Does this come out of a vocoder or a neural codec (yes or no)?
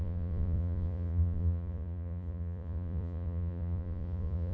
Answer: yes